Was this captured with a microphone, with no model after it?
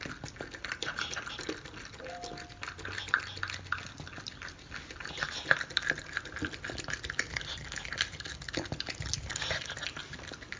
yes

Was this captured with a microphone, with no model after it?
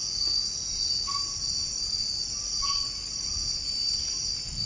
yes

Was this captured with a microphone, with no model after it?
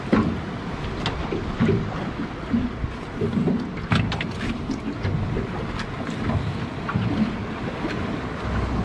yes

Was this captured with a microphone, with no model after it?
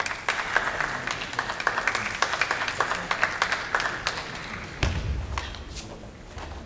yes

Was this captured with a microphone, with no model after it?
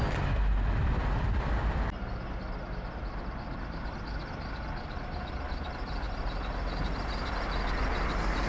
yes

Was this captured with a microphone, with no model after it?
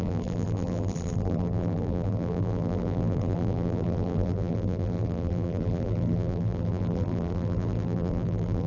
no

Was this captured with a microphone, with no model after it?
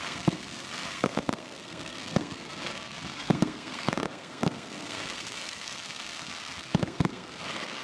no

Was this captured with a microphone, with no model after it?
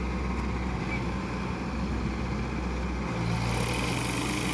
yes